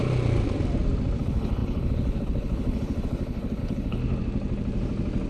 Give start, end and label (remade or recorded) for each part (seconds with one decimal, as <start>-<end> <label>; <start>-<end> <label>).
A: 0.0-1.2 recorded; 1.2-4.0 remade; 4.0-5.3 recorded